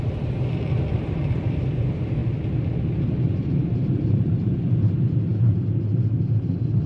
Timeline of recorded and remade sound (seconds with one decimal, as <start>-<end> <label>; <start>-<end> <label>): 0.0-2.2 remade; 2.2-3.0 recorded; 3.0-6.9 remade